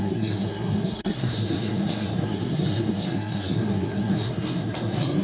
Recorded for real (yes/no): no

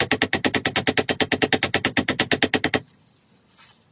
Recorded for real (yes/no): yes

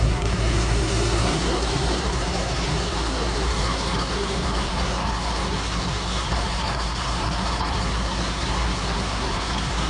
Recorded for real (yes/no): no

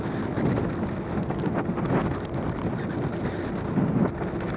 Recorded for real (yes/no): yes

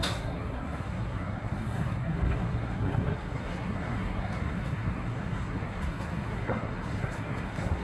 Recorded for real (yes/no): no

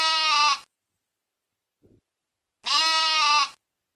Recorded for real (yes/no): yes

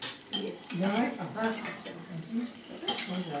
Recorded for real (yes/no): yes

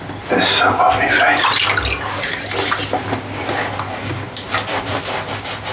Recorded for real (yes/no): yes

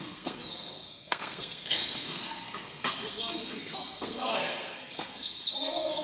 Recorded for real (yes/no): no